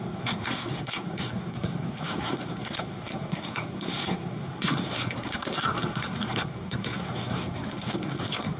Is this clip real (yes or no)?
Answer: no